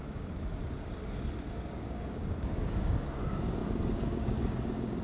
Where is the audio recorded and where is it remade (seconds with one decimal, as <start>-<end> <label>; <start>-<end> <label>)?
0.0-0.6 remade; 0.6-1.7 recorded; 1.7-5.0 remade